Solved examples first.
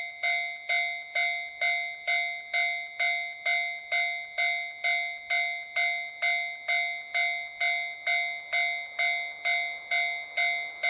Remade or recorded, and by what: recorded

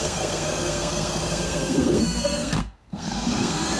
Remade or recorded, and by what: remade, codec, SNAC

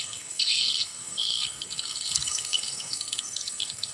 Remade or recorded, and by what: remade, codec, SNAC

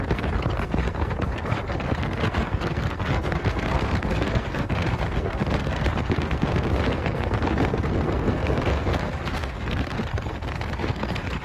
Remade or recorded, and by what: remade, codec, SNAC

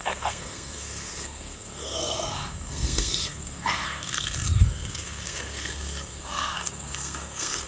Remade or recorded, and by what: remade, codec, SNAC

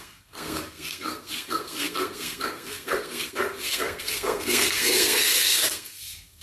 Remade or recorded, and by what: remade, codec, SNAC